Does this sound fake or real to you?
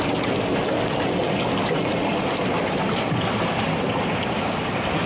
real